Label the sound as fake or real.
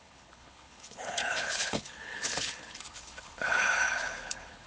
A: fake